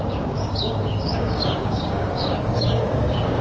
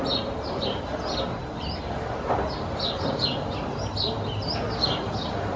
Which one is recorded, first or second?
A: second